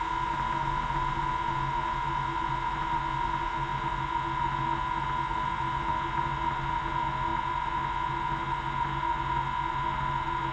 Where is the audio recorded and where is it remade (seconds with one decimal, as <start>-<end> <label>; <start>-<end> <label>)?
0.0-10.5 recorded